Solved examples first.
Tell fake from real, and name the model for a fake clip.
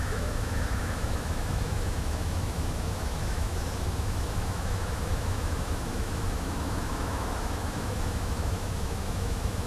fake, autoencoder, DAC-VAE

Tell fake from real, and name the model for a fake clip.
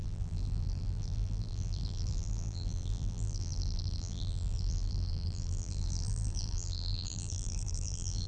fake, vocoder, BigVGAN v2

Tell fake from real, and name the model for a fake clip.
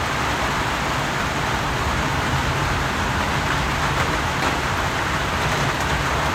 real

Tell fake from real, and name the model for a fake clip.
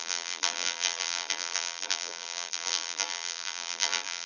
fake, vocoder, BigVGAN v2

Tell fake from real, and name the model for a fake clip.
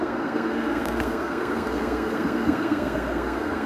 fake, codec, SNAC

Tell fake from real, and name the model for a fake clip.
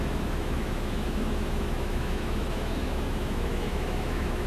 fake, autoencoder, DAC-VAE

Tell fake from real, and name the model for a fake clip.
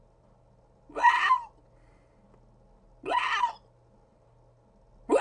real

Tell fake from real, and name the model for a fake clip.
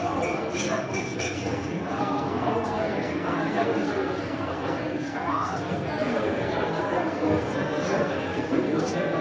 fake, codec, SNAC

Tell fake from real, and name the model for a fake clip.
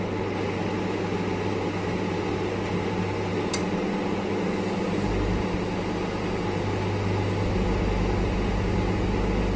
real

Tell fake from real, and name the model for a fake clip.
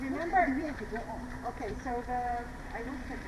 fake, vocoder, BigVGAN v2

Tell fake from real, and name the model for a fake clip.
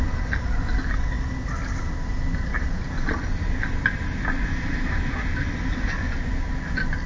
real